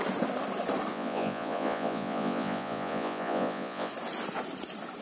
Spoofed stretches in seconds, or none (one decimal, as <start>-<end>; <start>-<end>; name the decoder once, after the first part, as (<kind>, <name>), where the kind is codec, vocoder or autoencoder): 0.9-3.9 (vocoder, Vocos)